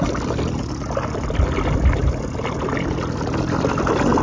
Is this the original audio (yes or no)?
yes